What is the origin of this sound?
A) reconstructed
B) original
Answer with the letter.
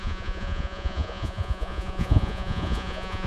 A